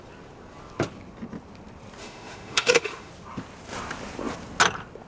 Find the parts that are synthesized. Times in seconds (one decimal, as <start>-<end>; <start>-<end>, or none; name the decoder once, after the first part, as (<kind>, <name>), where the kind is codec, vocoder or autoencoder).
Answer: 2.0-3.1 (autoencoder, DAC-VAE)

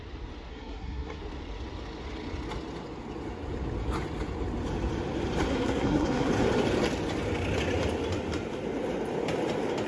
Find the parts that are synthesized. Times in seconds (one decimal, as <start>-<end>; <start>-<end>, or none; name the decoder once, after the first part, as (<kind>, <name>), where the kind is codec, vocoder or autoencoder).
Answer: 0.5-1.2 (codec, SNAC); 5.5-6.3

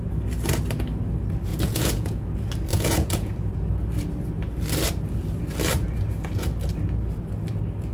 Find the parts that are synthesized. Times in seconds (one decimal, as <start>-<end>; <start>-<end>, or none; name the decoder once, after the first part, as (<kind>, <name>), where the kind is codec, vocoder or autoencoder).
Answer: 1.5-2.2 (vocoder, Vocos); 2.7-3.3

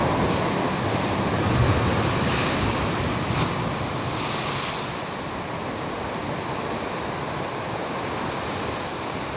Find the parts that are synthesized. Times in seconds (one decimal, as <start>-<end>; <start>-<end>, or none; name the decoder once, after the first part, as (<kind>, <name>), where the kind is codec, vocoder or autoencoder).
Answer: none

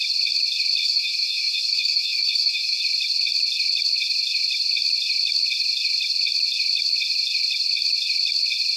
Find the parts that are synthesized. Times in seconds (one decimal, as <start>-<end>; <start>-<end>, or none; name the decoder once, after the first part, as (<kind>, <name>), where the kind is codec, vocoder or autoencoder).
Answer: 0.8-2.8 (autoencoder, DAC-VAE)

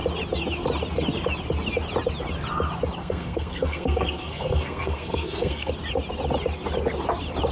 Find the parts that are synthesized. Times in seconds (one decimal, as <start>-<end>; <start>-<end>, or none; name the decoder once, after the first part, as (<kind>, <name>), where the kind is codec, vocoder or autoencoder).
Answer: 3.0-5.7 (codec, SNAC)

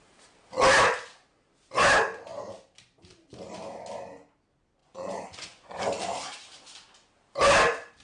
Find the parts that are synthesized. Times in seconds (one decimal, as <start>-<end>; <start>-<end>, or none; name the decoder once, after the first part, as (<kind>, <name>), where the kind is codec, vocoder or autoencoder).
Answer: 4.8-5.8 (vocoder, Vocos)

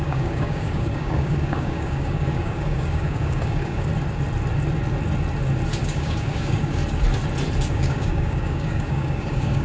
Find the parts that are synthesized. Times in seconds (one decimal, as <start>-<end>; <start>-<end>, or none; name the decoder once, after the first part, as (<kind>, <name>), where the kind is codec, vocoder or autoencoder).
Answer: 0.0-3.9 (codec, DAC); 5.8-6.8; 7.7-9.6